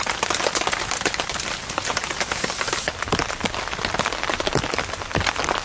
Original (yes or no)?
yes